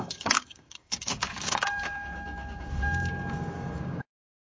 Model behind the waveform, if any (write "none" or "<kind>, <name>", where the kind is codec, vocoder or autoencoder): codec, DAC